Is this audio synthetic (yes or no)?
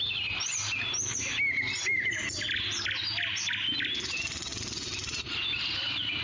no